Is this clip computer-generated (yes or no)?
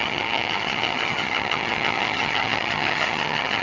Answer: yes